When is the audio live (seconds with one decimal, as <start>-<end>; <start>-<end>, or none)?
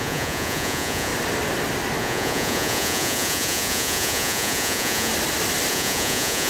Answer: 1.1-2.0; 5.1-5.7